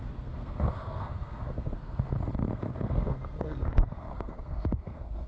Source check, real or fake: fake